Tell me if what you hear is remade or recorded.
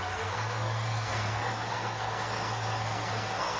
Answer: remade